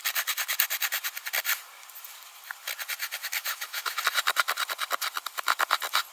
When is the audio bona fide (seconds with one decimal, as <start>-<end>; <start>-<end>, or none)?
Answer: 0.0-3.4; 4.0-6.1